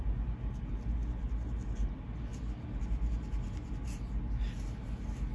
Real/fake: real